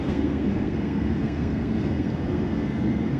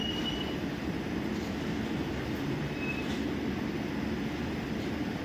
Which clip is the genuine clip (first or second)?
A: second